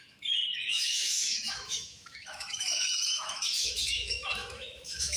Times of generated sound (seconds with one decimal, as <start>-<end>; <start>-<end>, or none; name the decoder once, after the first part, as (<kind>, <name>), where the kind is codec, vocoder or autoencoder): 0.0-5.2 (autoencoder, DAC-VAE)